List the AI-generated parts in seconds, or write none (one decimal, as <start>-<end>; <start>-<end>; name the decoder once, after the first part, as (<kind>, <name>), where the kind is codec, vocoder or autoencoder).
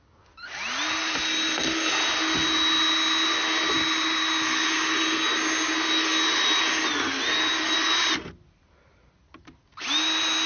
none